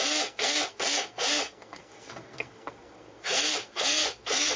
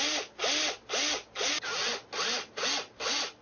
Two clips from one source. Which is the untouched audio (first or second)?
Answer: second